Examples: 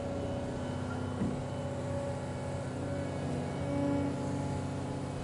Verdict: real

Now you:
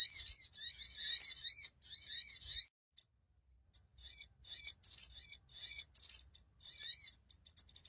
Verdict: real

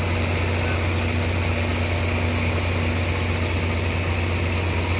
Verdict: real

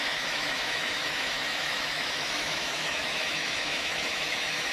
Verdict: fake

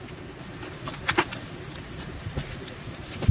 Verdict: real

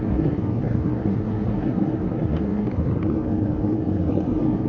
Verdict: fake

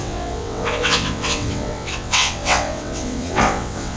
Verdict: fake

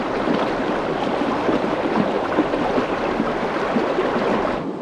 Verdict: real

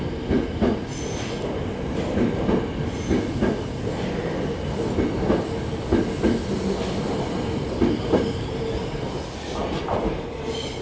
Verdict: real